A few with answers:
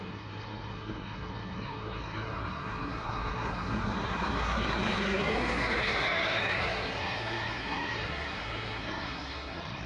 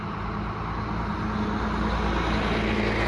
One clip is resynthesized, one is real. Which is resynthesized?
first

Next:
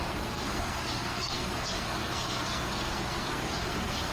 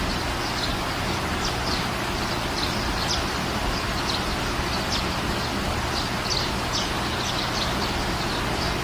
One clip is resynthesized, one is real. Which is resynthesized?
first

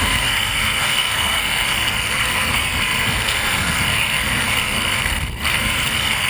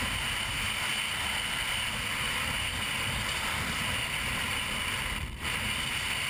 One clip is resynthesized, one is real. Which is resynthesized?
first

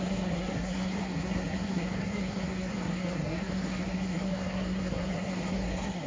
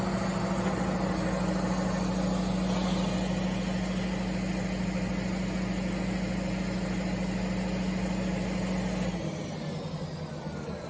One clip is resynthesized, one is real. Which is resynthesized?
first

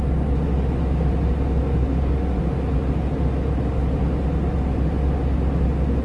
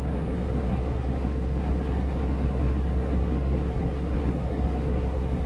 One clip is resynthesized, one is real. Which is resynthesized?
second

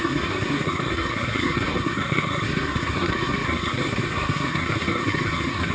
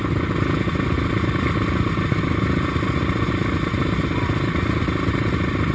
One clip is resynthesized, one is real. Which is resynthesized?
first